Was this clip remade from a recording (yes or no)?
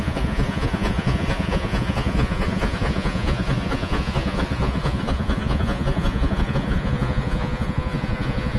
yes